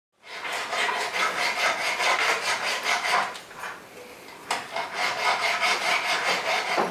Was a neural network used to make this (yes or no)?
no